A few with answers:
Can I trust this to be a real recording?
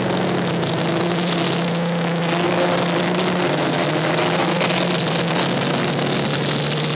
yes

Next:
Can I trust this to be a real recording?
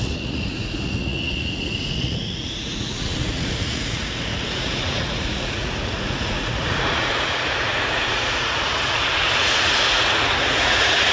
no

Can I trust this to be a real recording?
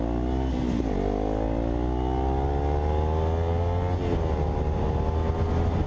yes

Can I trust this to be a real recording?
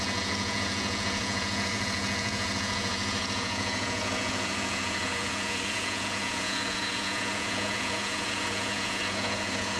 no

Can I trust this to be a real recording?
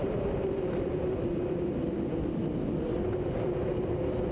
yes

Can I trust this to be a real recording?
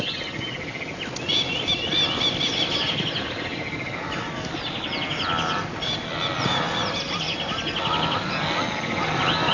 yes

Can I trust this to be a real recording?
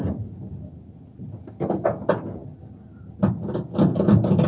yes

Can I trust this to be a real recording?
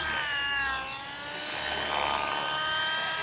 yes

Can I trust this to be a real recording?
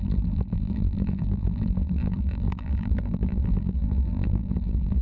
no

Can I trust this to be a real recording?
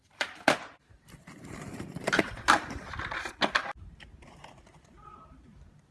no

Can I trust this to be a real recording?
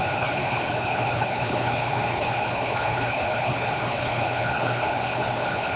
no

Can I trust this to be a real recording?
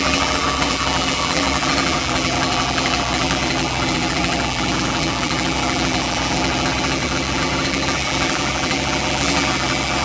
no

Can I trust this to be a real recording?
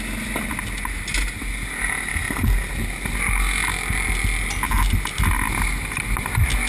yes